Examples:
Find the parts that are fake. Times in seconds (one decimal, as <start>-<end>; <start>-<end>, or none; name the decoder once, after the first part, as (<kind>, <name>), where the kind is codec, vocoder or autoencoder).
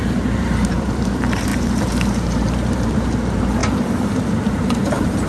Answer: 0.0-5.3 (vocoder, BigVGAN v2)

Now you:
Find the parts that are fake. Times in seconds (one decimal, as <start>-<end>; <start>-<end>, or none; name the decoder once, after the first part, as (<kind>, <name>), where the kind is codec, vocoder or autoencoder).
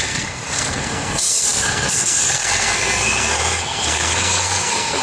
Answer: 0.0-5.0 (codec, SNAC)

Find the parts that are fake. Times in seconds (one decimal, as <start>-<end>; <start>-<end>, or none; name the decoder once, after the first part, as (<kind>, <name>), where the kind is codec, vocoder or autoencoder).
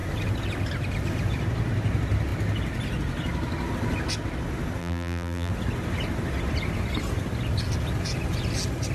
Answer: 4.8-5.5 (vocoder, BigVGAN v2)